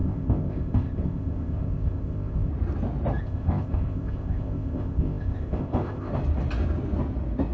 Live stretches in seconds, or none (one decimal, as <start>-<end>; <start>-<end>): 2.5-3.2; 6.1-7.5